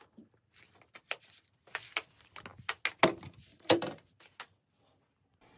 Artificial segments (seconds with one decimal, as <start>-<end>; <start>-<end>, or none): 3.5-4.4